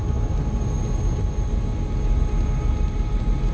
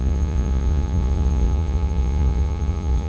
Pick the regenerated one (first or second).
second